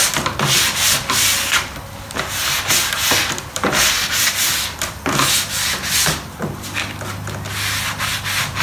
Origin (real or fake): real